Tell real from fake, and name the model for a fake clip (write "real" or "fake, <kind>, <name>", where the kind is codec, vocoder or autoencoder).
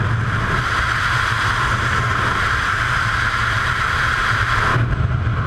real